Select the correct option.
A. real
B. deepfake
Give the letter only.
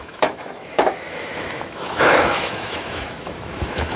B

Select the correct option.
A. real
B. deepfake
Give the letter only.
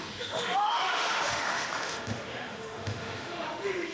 B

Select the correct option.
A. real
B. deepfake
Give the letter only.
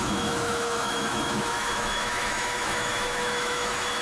B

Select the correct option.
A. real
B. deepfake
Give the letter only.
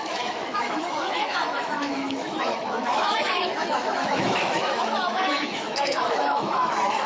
B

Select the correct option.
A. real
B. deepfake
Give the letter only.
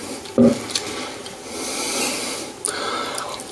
A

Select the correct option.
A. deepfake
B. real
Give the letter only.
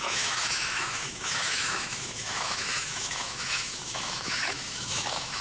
A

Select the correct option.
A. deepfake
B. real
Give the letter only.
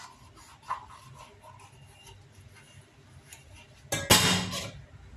B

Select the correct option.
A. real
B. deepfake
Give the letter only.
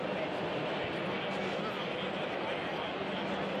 A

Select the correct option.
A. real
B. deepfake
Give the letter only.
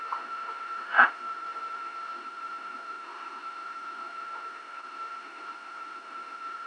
B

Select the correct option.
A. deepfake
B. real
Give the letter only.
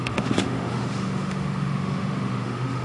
A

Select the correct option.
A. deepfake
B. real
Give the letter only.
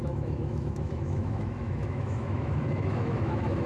A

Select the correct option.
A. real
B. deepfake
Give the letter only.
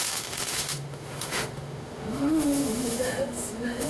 B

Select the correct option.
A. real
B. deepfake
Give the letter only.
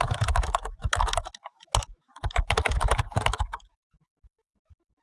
B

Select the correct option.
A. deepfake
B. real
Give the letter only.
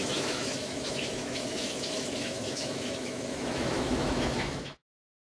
A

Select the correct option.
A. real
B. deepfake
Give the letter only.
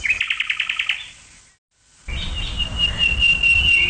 A